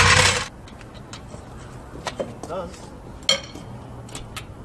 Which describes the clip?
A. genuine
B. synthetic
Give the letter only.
A